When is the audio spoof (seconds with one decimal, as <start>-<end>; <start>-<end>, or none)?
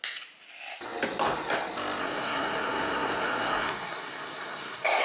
2.0-5.0